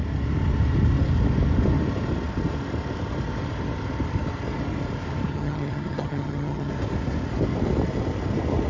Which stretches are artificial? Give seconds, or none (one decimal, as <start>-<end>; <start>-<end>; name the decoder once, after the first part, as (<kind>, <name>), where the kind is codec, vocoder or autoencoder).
5.3-6.7 (vocoder, HiFi-GAN)